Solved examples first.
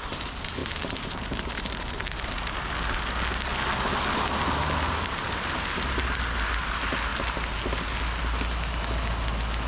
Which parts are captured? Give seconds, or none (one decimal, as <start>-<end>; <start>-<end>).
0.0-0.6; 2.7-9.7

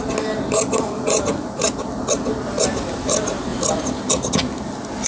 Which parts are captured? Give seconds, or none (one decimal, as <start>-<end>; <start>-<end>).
0.0-3.5; 4.1-5.1

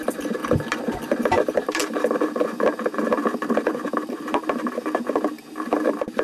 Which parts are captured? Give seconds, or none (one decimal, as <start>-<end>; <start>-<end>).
0.4-1.2

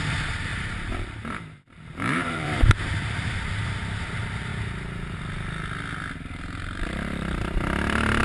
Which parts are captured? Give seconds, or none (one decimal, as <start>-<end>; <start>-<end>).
0.0-0.5; 2.6-8.2

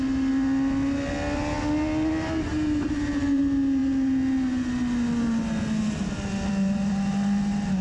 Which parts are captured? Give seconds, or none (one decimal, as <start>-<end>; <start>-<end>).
0.0-2.5; 3.4-7.8